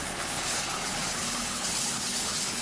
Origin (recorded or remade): remade